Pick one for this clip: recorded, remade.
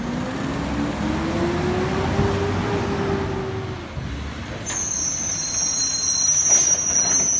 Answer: recorded